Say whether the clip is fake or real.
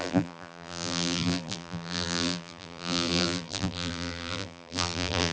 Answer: fake